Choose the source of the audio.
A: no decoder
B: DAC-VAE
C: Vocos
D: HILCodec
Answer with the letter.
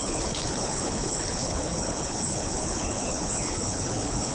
D